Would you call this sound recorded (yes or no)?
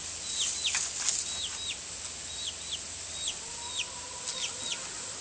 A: yes